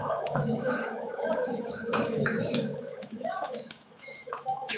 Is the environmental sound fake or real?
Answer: fake